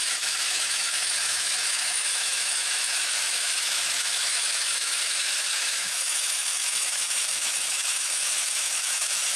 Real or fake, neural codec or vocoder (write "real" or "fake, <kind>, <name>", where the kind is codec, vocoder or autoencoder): fake, autoencoder, DAC-VAE